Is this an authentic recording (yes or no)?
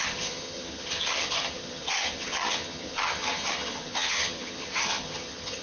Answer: no